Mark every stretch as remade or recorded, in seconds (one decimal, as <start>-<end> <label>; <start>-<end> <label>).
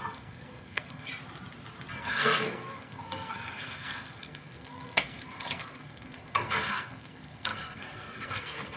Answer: 0.0-1.1 remade; 1.1-2.0 recorded; 2.0-8.8 remade